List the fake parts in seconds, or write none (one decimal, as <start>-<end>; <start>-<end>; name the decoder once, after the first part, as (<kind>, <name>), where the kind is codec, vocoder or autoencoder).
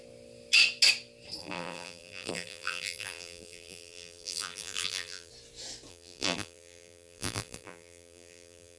1.4-5.3 (vocoder, BigVGAN v2); 5.9-8.8